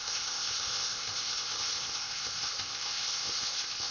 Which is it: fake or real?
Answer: fake